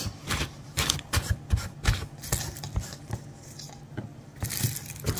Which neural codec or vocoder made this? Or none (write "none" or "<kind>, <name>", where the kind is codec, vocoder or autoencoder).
none